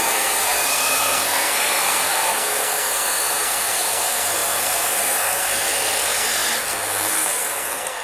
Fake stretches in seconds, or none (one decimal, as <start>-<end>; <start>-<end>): 0.0-8.0